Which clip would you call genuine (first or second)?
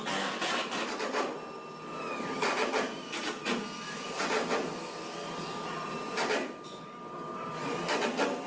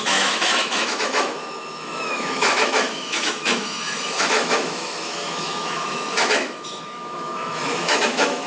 first